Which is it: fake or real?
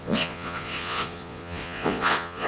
fake